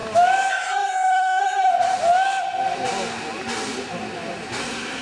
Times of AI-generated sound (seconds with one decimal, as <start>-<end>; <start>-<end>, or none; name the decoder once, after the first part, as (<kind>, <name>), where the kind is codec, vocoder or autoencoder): 0.5-1.7 (codec, SNAC); 4.6-5.0